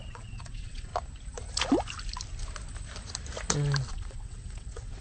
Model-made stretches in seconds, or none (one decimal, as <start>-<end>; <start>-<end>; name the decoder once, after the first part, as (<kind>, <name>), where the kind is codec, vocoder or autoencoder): 0.0-0.9 (vocoder, WaveNeXt); 3.9-5.0